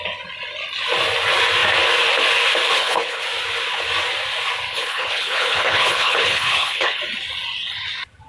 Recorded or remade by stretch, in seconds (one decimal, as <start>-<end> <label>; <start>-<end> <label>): 0.0-2.7 recorded; 2.7-3.2 remade; 3.2-4.7 recorded; 4.7-7.0 remade; 7.0-8.3 recorded